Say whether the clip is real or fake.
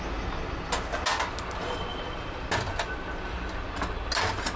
real